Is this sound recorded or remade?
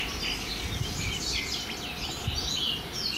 recorded